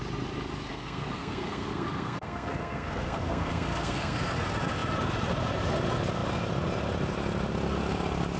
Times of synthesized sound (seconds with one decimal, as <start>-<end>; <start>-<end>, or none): 0.7-4.3